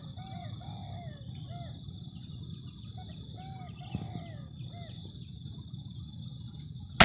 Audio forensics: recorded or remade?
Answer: recorded